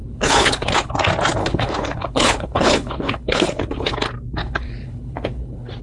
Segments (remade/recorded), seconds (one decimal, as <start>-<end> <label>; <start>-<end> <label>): 0.0-0.9 remade; 0.9-1.4 recorded; 1.4-3.9 remade; 3.9-4.4 recorded; 4.4-5.8 remade